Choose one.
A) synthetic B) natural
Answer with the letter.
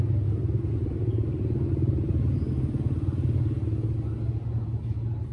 B